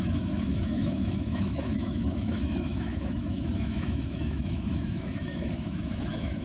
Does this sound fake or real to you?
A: fake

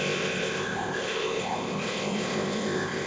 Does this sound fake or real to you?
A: fake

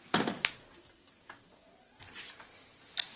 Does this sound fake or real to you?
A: real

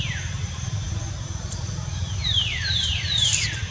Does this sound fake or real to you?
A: fake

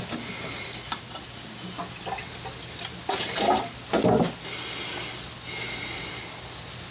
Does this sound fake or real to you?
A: real